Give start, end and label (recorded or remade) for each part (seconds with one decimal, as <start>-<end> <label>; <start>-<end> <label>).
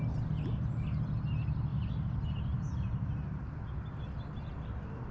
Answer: 0.0-1.7 recorded; 1.7-3.1 remade; 3.1-5.1 recorded